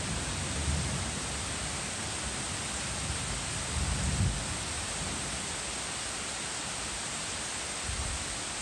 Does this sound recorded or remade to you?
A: recorded